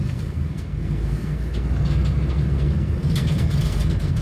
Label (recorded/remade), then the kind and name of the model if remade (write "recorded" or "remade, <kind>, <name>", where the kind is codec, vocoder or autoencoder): remade, codec, SNAC